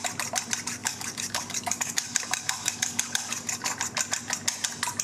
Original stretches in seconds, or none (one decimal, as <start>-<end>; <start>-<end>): 0.0-0.8; 3.8-5.0